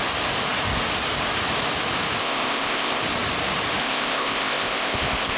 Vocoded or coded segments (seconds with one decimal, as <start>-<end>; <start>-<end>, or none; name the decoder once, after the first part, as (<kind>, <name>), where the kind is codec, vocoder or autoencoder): 2.2-3.0 (codec, ZipCodec); 3.8-5.4